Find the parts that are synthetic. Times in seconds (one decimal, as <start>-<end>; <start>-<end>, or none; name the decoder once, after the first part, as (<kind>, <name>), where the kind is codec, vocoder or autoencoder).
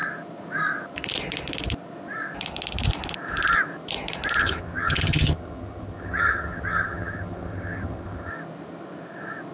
4.4-8.3 (vocoder, HiFi-GAN)